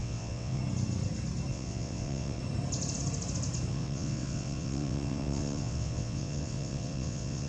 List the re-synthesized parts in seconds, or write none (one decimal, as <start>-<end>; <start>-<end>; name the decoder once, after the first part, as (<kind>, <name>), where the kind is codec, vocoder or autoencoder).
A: 0.0-0.6 (vocoder, WaveNeXt); 1.5-2.4; 3.7-7.5